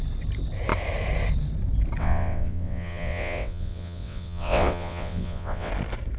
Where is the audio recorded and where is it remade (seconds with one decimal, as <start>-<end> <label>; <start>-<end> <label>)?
0.0-2.0 recorded; 2.0-5.7 remade; 5.7-6.2 recorded